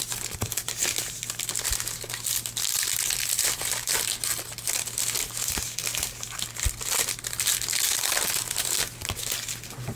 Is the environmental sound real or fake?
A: real